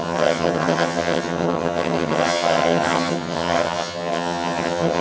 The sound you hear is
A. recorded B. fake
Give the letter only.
B